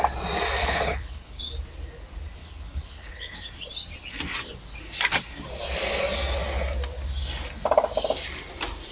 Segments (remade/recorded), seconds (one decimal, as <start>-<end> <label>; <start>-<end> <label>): 0.0-0.6 recorded; 0.6-1.4 remade; 1.4-2.4 recorded; 2.4-3.4 remade; 3.4-8.9 recorded